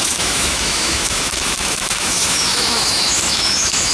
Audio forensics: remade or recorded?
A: remade